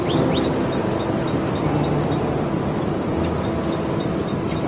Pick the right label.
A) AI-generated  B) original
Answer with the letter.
B